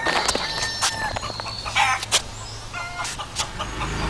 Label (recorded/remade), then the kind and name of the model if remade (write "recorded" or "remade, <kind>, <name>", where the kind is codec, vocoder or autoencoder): recorded